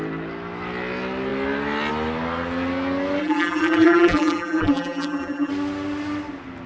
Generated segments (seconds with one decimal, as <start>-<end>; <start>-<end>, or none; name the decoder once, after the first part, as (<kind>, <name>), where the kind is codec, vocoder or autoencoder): 3.2-5.5 (vocoder, BigVGAN v2)